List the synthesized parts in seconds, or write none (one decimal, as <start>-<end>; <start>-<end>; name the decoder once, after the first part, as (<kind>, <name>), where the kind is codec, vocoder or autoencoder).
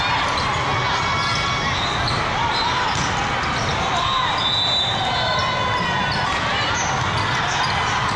none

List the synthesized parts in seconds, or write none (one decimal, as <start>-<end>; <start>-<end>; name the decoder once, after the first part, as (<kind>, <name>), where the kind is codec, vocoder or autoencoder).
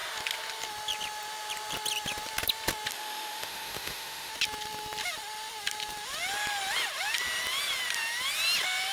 2.9-4.3 (autoencoder, DAC-VAE)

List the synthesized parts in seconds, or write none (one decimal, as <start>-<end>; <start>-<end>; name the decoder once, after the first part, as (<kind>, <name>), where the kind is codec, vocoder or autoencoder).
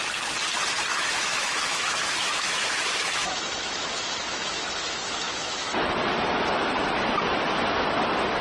0.9-5.9 (autoencoder, DAC-VAE)